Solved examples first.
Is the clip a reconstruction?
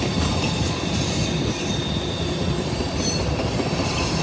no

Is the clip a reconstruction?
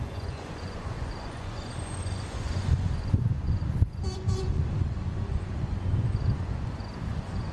yes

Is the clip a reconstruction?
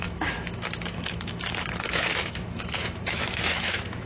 yes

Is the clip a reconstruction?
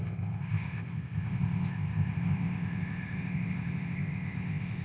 yes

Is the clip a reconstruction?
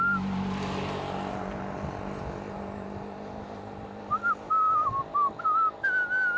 no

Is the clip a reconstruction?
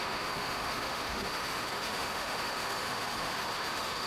yes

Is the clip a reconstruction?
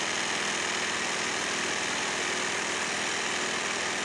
no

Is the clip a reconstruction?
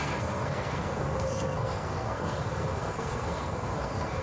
yes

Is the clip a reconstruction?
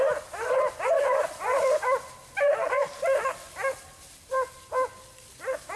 no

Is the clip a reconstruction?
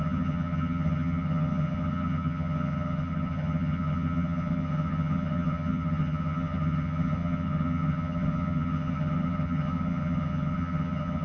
yes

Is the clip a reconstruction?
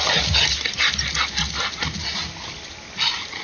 no